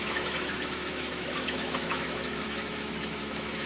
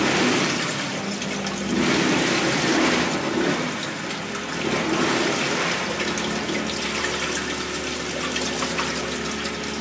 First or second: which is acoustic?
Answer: second